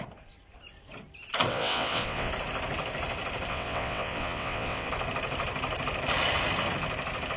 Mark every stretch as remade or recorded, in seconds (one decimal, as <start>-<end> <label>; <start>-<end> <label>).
0.0-1.5 recorded; 1.5-2.3 remade; 2.3-3.5 recorded; 3.5-4.9 remade; 4.9-7.4 recorded